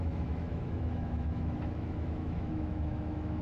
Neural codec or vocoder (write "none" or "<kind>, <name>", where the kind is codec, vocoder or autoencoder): autoencoder, DAC-VAE